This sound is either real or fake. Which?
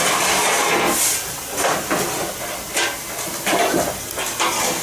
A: real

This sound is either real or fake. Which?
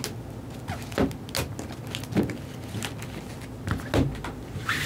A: real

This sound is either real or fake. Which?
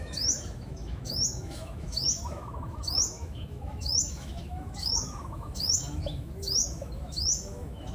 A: fake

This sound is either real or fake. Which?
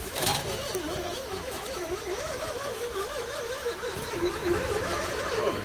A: fake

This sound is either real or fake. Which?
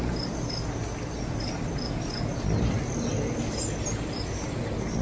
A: real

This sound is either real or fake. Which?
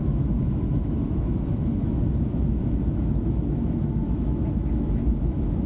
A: fake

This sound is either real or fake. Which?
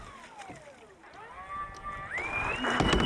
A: real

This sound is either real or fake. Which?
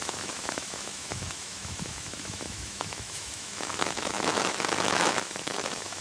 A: fake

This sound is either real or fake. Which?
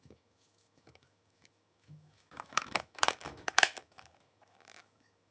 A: fake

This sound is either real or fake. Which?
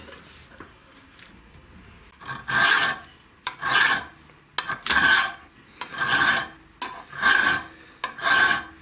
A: real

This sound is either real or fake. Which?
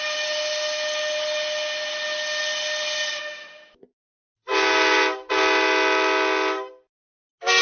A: real